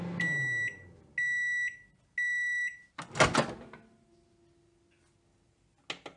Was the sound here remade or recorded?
recorded